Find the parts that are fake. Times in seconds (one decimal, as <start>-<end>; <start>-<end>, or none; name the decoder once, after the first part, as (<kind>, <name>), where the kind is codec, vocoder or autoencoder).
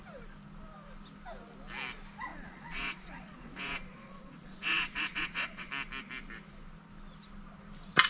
2.3-5.7 (vocoder, Vocos)